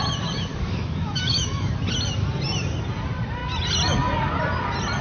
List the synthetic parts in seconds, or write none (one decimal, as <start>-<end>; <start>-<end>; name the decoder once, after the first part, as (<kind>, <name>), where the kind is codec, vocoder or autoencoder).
0.5-1.7 (autoencoder, DAC-VAE)